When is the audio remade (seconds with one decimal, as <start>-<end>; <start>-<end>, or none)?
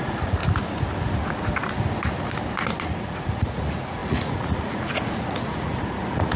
0.0-0.4; 2.8-6.4